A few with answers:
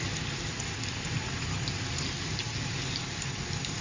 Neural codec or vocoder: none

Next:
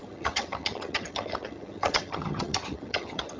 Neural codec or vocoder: vocoder, HiFi-GAN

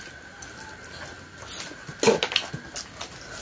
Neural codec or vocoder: none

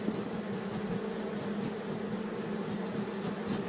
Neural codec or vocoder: none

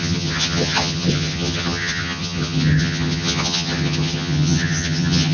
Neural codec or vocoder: vocoder, HiFi-GAN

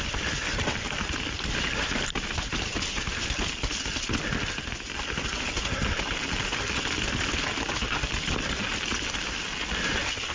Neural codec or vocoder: none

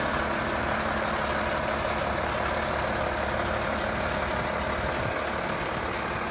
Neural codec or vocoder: none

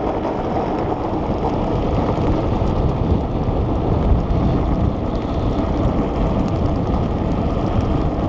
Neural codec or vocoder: none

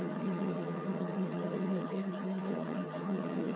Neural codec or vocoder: vocoder, HiFi-GAN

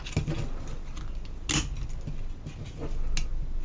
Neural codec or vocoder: none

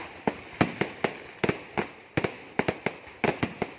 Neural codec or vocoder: none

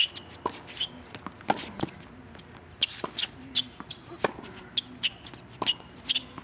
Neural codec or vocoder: none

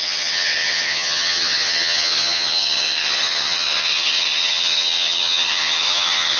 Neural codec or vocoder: vocoder, HiFi-GAN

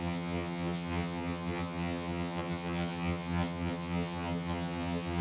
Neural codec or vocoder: vocoder, HiFi-GAN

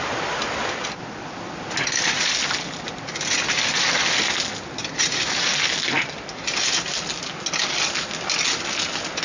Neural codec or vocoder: none